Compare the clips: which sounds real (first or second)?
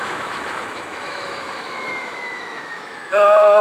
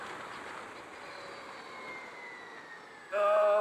second